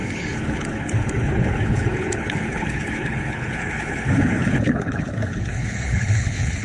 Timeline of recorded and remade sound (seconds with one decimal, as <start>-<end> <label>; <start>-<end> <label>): 0.0-6.6 remade

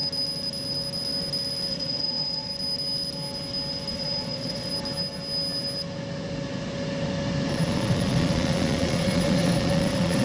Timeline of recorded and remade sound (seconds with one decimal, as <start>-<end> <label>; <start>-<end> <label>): 0.0-1.7 recorded; 1.7-2.5 remade; 2.5-3.9 recorded; 3.9-4.7 remade; 4.7-7.5 recorded; 7.5-10.2 remade

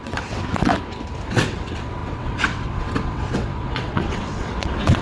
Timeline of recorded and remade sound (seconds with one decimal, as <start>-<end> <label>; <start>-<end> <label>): 0.0-0.7 remade; 0.7-1.3 recorded; 1.3-5.0 remade

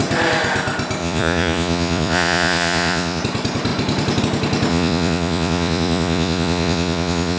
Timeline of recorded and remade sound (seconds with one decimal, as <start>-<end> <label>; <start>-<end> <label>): 0.0-1.0 recorded; 1.0-3.2 remade; 3.2-4.7 recorded; 4.7-7.4 remade

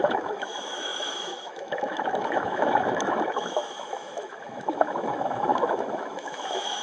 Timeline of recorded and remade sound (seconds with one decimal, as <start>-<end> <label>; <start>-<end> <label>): 0.0-6.8 remade

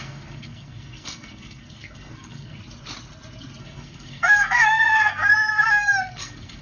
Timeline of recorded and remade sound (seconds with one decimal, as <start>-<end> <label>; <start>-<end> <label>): 0.0-2.6 remade; 2.6-3.6 recorded; 3.6-6.6 remade